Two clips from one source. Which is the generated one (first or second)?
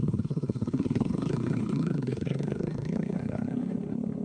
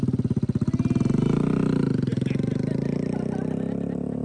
first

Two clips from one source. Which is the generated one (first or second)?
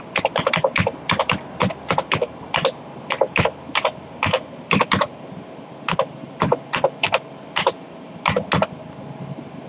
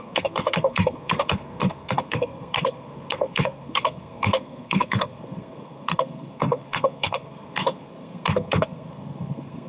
second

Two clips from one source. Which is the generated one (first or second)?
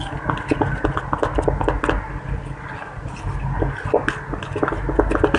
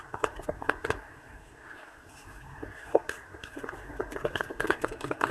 second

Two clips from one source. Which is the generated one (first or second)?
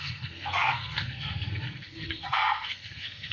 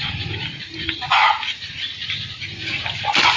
first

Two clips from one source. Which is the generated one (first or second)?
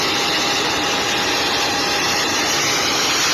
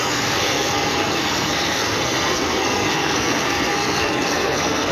second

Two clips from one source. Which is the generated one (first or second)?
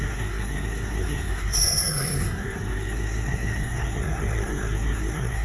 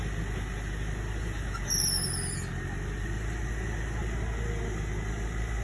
first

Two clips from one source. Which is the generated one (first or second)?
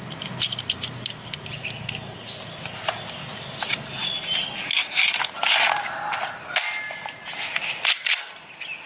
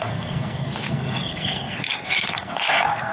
second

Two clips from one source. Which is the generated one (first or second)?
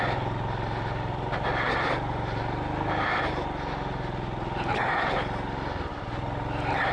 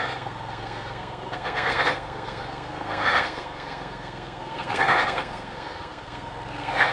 second